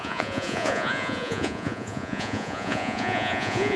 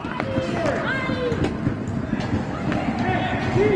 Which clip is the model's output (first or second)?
first